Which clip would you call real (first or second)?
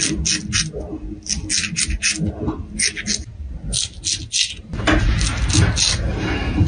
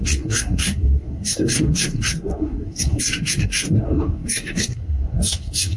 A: first